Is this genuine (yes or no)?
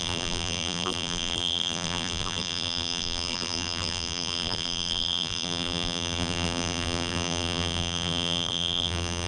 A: no